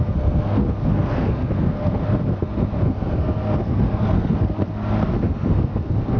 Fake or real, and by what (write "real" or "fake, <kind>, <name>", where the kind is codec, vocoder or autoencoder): fake, codec, SNAC